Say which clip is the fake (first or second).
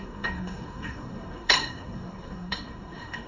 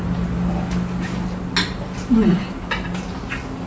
first